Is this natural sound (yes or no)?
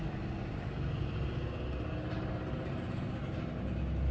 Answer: yes